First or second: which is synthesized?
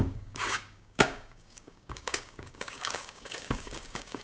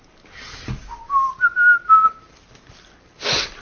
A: first